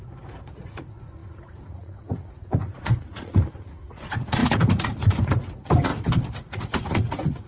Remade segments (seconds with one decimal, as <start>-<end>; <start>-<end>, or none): 0.0-5.9; 6.4-7.5